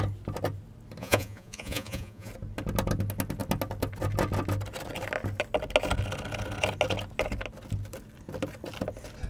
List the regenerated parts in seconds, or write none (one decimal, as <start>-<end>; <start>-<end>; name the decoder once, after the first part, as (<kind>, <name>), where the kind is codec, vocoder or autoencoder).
1.0-2.3 (vocoder, Vocos)